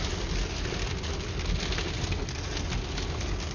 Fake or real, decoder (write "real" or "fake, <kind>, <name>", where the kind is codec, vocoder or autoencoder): real